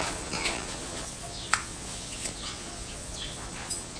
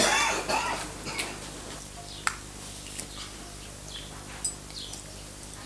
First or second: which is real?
second